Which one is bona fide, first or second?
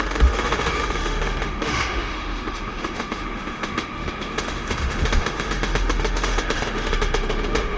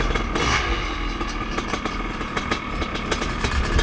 second